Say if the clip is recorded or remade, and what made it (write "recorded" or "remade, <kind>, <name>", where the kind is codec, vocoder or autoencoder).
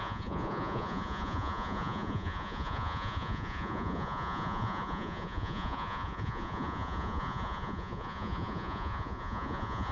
remade, vocoder, Vocos